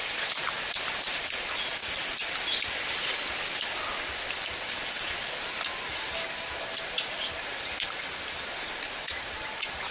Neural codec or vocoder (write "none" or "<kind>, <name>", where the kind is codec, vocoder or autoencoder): none